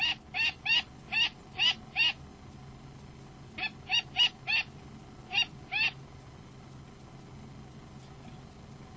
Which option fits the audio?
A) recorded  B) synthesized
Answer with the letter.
A